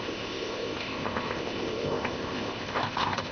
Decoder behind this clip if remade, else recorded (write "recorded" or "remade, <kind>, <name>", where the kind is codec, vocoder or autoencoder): remade, codec, ZipCodec